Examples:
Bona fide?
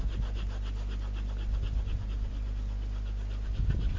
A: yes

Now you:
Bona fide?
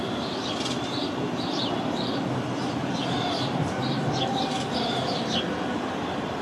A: no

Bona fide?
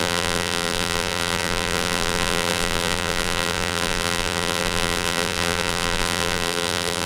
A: no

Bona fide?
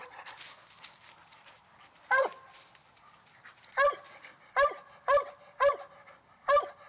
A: yes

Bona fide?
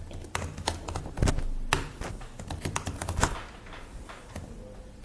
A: yes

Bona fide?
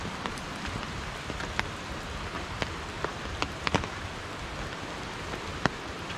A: yes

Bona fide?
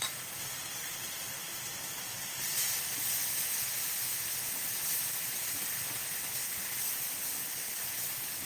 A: yes